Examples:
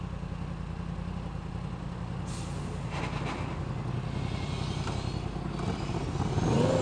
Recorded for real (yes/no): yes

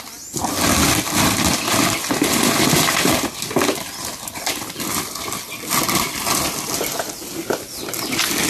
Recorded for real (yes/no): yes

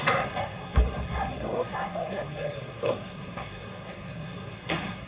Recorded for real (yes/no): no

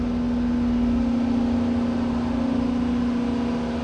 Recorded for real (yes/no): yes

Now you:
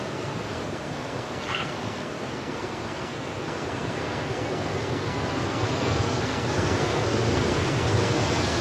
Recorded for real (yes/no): no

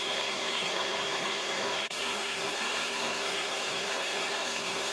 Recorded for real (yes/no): no